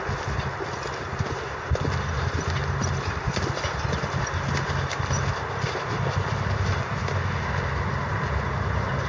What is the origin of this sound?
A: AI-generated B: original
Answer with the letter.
B